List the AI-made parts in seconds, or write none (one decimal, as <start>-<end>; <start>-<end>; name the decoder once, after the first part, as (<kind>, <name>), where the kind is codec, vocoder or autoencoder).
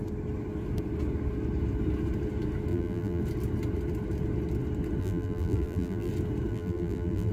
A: 2.7-3.2 (vocoder, BigVGAN v2); 5.0-6.1; 6.5-7.3